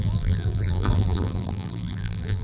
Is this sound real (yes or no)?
no